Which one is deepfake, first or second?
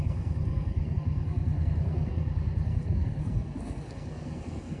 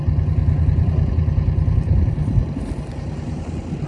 first